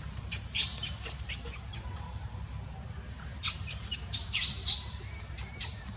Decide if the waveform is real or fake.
fake